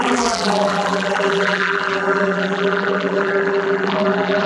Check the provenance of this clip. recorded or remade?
remade